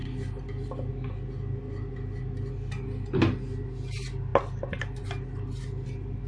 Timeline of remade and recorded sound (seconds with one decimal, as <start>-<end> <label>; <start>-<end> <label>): 0.0-6.3 recorded